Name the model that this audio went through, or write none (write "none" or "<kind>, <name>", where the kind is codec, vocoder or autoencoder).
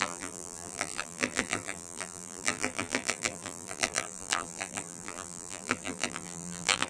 vocoder, BigVGAN v2